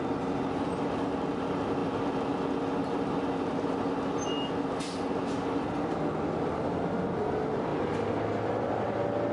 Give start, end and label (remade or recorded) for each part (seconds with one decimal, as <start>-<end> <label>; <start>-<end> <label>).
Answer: 0.0-9.3 recorded